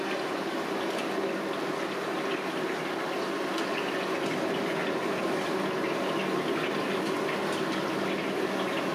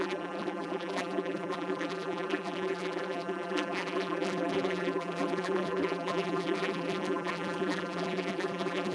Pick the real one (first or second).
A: first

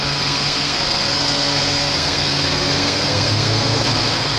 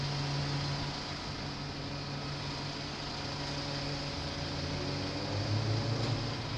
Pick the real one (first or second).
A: second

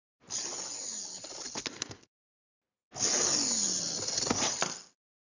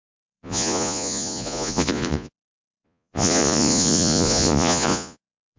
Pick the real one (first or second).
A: first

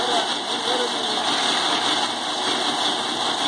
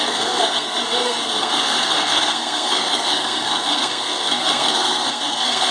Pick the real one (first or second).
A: first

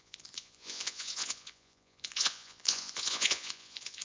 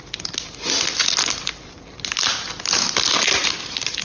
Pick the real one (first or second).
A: second